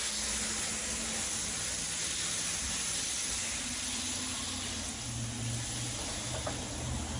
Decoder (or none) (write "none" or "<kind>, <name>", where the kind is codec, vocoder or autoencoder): none